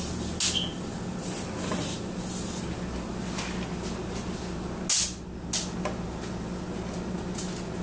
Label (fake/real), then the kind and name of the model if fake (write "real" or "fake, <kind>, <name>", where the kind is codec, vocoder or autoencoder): real